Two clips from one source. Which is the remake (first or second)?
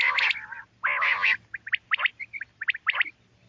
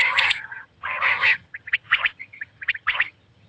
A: second